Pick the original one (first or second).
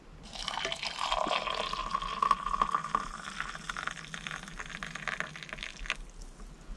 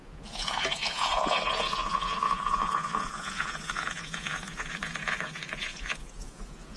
first